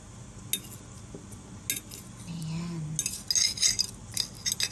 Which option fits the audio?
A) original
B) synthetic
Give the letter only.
A